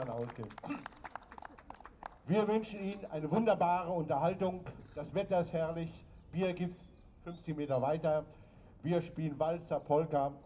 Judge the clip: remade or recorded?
recorded